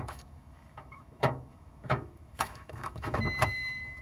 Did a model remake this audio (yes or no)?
yes